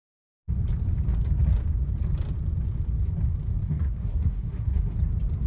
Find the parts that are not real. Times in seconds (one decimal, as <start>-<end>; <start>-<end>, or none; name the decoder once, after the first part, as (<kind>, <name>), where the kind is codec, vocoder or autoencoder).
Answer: 3.6-4.9 (codec, SNAC)